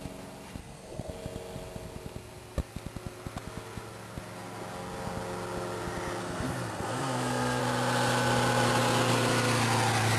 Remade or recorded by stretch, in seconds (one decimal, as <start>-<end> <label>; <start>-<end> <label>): 0.0-0.6 recorded; 0.6-1.1 remade; 1.1-6.2 recorded; 6.2-7.6 remade; 7.6-10.2 recorded